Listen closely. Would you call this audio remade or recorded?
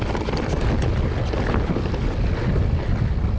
recorded